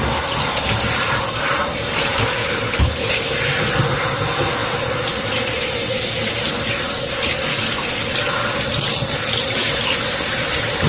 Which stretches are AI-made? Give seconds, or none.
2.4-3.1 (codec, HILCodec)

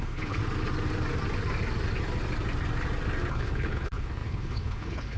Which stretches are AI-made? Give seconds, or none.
0.0-0.4 (codec, HILCodec); 3.3-5.2